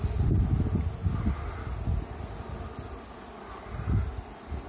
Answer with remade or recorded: recorded